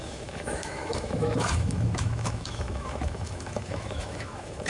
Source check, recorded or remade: remade